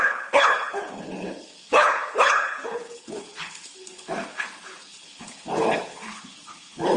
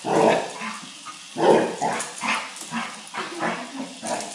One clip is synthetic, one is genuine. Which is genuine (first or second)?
second